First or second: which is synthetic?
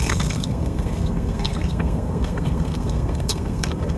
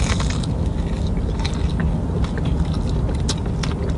first